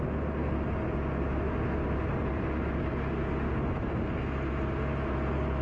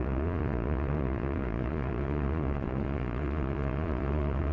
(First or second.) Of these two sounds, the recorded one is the first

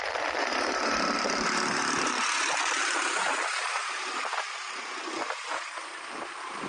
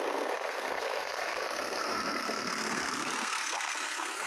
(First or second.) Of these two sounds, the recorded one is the first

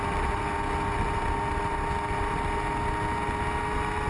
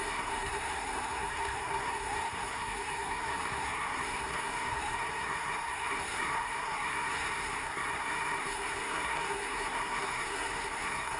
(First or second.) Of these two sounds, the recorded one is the first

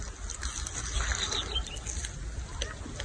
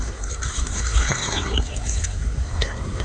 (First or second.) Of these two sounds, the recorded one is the first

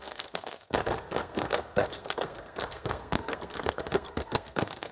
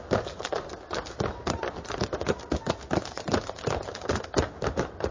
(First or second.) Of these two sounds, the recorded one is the second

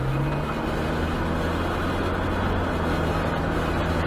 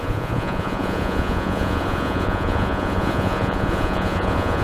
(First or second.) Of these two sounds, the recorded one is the first